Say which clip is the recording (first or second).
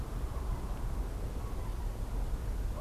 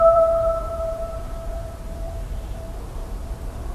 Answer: first